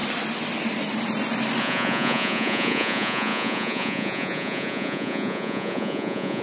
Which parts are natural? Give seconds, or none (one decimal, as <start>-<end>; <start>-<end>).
0.0-1.6

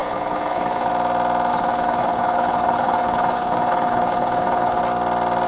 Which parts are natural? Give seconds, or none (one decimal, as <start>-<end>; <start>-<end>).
0.9-1.5; 4.8-5.5

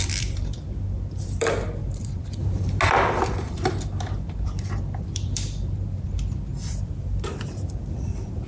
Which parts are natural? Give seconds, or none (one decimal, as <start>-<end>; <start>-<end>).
2.4-2.9

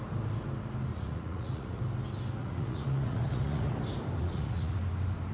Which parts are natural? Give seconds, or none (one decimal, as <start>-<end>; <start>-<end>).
0.0-0.9; 1.8-2.4; 3.7-4.2; 4.8-5.3

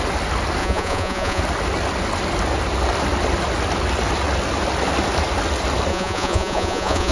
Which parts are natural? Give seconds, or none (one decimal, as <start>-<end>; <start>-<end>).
0.0-0.6; 1.4-5.9

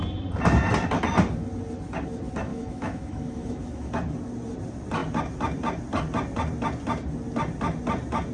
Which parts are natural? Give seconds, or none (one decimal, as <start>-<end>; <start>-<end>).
0.0-2.5; 3.9-8.3

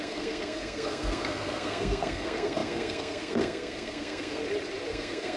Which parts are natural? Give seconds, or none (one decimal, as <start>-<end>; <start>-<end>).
4.4-4.9

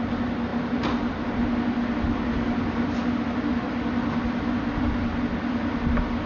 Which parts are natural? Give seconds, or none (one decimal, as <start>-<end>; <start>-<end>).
0.0-6.3